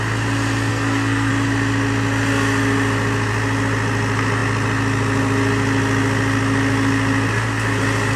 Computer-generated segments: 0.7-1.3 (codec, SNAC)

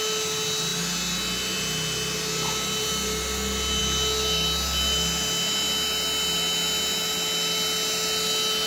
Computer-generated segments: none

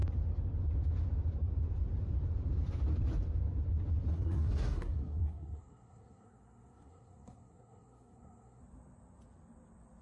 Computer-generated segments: 4.1-8.6 (codec, SNAC)